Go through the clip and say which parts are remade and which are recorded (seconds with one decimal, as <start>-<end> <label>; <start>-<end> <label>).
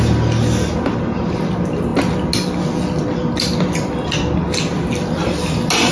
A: 0.0-5.9 recorded